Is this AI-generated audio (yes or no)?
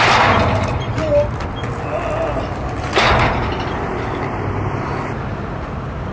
no